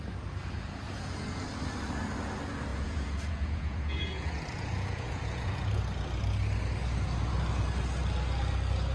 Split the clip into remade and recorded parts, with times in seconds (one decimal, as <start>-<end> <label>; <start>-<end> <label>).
0.0-0.4 recorded; 0.4-1.4 remade; 1.4-2.7 recorded; 2.7-5.8 remade; 5.8-8.9 recorded